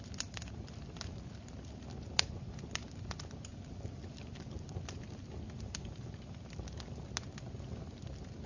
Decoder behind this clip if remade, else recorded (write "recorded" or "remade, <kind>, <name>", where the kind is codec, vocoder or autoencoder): recorded